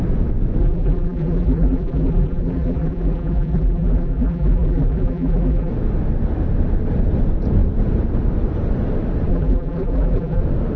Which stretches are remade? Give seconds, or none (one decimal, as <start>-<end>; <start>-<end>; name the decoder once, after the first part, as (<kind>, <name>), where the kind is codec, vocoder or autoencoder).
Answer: 0.6-5.7 (vocoder, BigVGAN v2); 9.3-10.4